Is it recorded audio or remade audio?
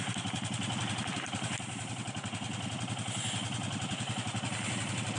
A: recorded